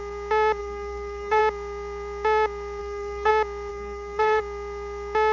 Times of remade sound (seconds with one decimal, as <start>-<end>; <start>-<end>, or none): 0.6-1.4; 2.8-3.3; 3.7-4.4